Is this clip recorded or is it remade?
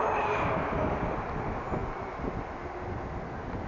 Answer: recorded